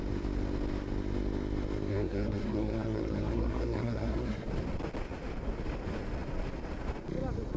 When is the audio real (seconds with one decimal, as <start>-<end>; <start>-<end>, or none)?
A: 0.0-1.9; 4.5-7.6